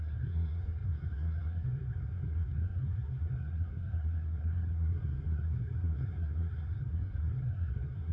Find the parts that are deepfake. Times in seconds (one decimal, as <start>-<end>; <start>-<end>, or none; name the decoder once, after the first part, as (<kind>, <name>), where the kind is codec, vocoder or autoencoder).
0.0-8.1 (codec, SNAC)